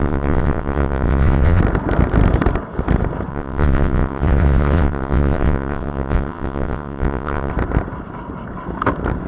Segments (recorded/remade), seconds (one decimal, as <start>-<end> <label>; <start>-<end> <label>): 0.0-1.6 remade; 1.6-3.3 recorded; 3.3-7.5 remade; 7.5-9.3 recorded